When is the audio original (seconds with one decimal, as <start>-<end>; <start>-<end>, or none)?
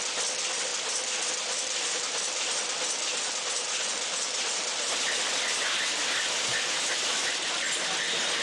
0.0-8.4